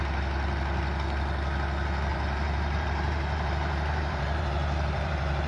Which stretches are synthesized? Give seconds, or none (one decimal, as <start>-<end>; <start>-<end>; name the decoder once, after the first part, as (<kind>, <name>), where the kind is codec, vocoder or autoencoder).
2.1-5.5 (vocoder, BigVGAN v2)